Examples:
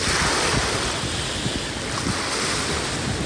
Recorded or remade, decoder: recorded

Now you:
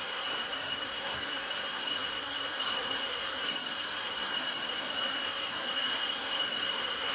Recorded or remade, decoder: remade, codec, SNAC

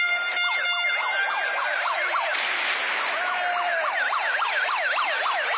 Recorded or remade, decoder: recorded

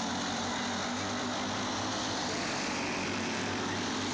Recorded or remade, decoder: recorded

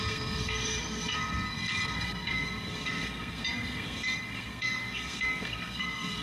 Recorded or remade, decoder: remade, codec, SNAC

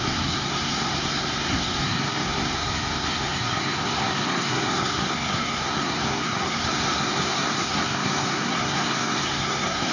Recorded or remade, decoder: remade, codec, SNAC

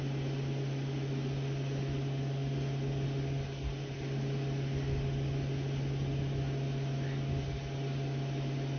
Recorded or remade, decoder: recorded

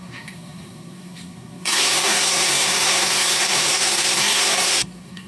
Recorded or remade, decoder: remade, codec, SNAC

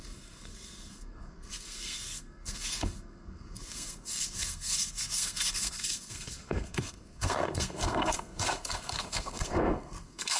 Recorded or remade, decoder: remade, codec, SNAC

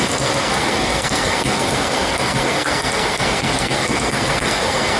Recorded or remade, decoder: remade, codec, SNAC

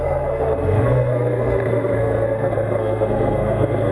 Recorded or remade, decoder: remade, codec, SNAC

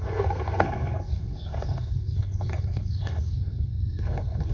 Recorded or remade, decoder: remade, codec, SNAC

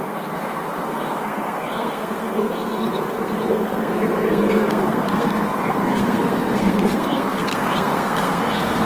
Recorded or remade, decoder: remade, codec, SNAC